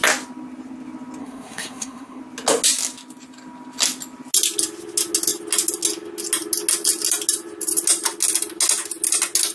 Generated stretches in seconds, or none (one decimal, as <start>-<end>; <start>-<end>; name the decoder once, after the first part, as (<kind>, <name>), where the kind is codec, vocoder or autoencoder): 1.2-2.2 (codec, SNAC)